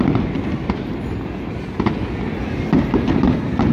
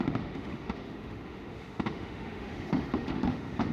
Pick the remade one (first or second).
second